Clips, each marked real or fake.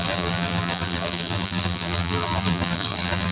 fake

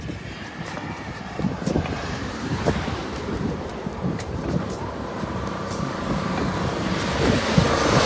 fake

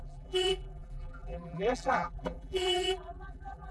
fake